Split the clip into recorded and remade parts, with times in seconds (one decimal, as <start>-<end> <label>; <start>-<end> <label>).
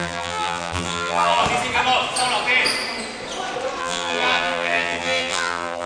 0.0-1.4 remade; 1.4-3.8 recorded; 3.8-5.9 remade